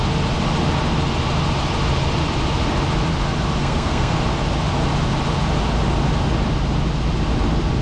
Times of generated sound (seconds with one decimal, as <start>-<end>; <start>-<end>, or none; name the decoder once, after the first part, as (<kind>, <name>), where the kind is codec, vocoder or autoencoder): 3.6-4.2 (codec, SNAC)